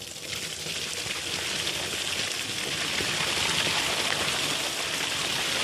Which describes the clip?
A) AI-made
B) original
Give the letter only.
B